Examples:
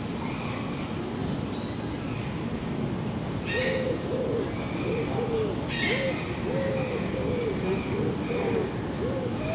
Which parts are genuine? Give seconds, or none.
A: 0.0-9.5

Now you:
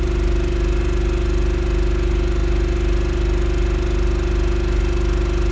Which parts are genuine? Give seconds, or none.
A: 0.0-5.5

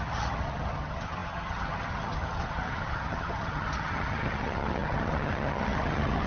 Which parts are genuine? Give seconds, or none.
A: none

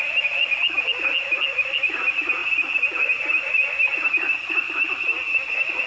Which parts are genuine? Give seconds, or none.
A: 0.0-5.9

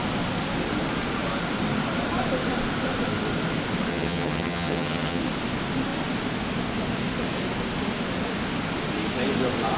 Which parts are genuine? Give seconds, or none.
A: 0.0-3.9; 5.2-9.8